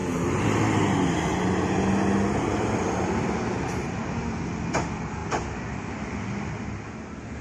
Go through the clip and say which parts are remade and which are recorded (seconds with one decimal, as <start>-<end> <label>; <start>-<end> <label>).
0.0-7.4 recorded